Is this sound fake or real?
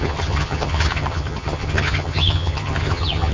fake